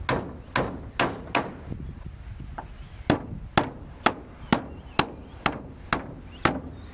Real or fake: real